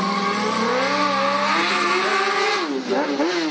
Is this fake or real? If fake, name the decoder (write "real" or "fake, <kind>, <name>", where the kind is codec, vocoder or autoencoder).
real